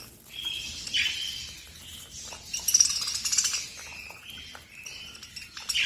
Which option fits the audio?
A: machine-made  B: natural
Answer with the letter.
B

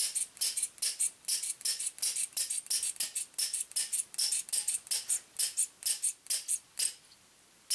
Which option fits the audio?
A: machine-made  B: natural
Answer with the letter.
B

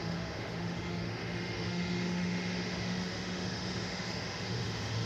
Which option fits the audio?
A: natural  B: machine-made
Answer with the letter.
B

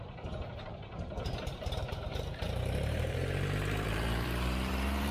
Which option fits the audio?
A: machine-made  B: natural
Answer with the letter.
A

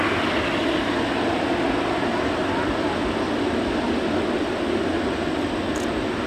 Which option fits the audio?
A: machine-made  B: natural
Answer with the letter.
B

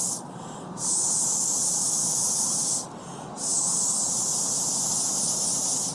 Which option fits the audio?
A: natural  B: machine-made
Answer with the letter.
B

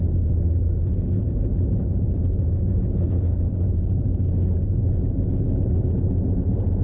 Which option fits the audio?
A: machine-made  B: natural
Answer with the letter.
A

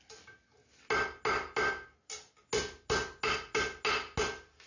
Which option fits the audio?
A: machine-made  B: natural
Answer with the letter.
B